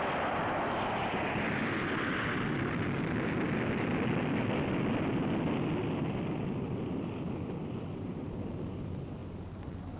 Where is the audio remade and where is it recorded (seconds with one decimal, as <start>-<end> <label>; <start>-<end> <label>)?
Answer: 0.0-1.6 remade; 1.6-6.8 recorded; 6.8-9.2 remade; 9.2-10.0 recorded